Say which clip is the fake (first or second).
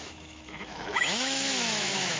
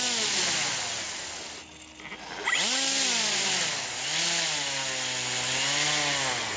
first